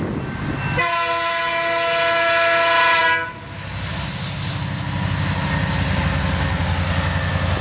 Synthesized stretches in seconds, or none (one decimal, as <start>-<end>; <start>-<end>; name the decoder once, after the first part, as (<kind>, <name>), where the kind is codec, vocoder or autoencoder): none